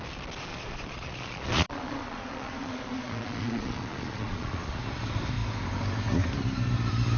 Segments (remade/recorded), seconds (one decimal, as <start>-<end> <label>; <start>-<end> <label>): 0.0-0.5 recorded; 0.5-4.8 remade; 4.8-7.2 recorded